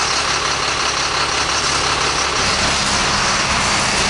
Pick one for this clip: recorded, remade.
recorded